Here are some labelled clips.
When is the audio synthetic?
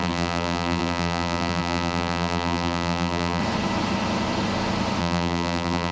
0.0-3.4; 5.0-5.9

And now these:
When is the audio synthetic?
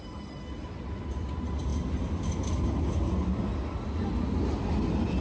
none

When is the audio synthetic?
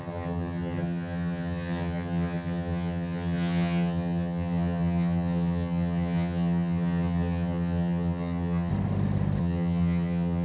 0.0-8.7; 9.4-10.4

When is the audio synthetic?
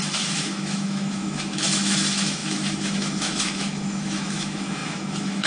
0.0-5.5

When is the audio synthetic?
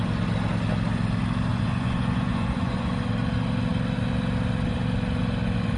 1.5-2.9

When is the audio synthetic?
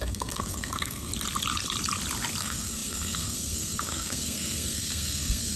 0.0-1.1; 2.4-5.6